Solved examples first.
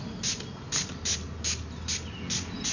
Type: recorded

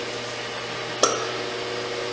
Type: recorded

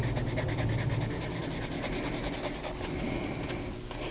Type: recorded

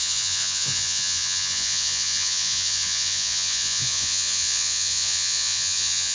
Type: remade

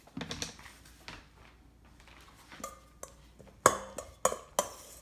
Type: recorded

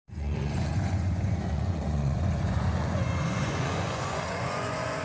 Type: remade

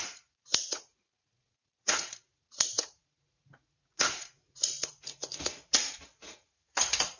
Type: remade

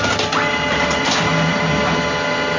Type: recorded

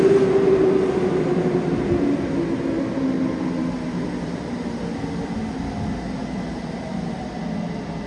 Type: recorded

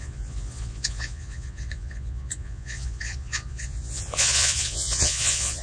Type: remade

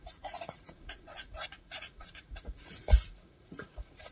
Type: remade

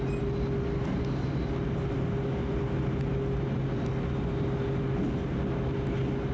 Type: recorded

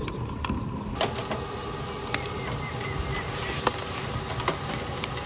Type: recorded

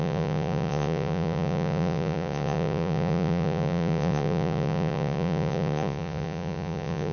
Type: remade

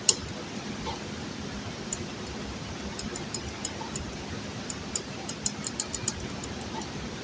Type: recorded